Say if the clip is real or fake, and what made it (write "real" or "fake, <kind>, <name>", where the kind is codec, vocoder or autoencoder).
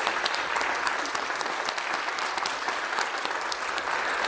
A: real